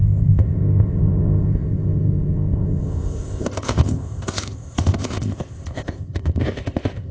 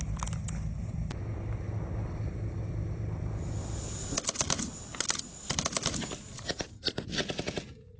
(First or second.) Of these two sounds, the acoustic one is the second